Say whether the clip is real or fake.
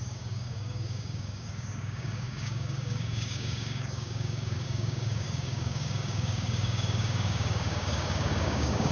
fake